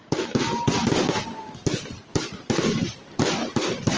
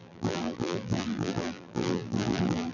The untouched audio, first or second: first